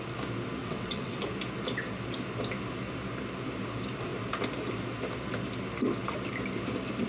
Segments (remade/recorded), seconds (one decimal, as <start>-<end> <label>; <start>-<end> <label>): 0.0-0.6 recorded; 0.6-1.2 remade; 1.2-7.1 recorded